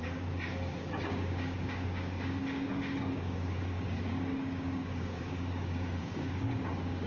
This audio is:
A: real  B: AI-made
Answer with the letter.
B